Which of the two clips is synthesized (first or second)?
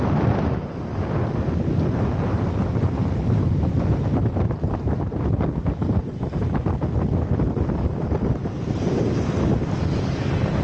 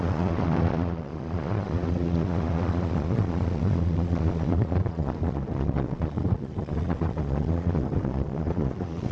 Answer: second